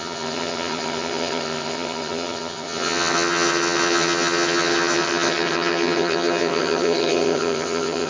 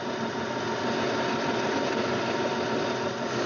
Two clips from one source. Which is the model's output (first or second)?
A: first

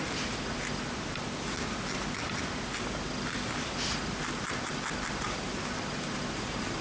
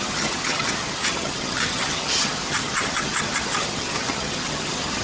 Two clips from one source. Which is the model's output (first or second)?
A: second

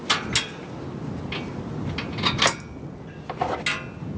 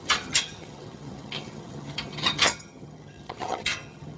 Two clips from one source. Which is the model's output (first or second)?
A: second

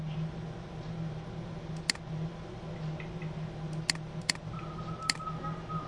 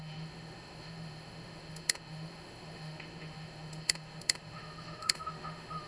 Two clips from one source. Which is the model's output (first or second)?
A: second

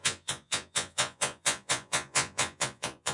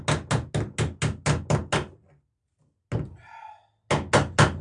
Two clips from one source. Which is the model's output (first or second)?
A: first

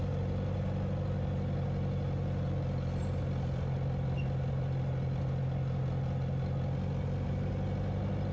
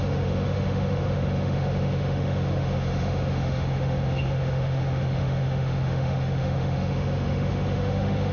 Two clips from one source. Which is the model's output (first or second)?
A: second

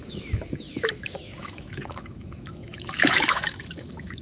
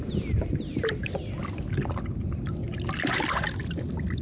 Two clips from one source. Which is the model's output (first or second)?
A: first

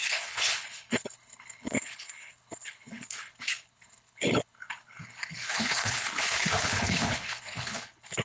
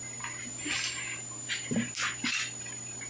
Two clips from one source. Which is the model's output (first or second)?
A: first